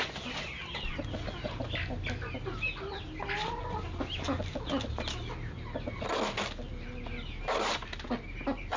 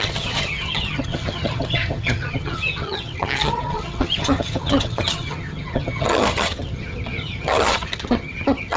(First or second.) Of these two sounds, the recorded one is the first